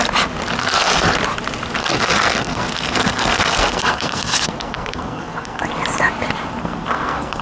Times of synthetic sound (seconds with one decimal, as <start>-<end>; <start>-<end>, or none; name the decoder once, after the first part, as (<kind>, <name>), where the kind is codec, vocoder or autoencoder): 0.6-1.2 (codec, SNAC); 1.8-5.6; 6.6-7.4